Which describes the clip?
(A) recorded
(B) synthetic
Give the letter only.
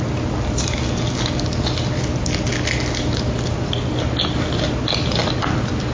A